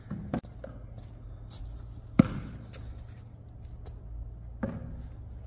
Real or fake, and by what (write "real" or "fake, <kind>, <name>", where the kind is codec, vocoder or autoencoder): real